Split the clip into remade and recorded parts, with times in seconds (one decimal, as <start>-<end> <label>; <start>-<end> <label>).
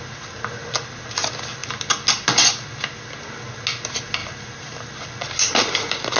0.0-4.2 recorded; 4.2-4.9 remade; 4.9-6.2 recorded